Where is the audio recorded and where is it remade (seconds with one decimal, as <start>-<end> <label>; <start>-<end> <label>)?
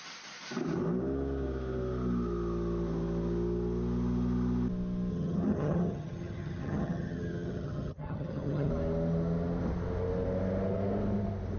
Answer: 0.0-5.1 recorded; 5.1-8.7 remade; 8.7-11.6 recorded